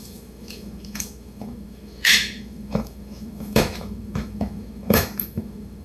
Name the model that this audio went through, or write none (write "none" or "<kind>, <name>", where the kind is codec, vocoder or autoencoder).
autoencoder, DAC-VAE